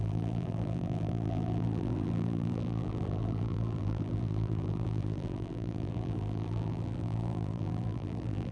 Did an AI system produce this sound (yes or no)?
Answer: yes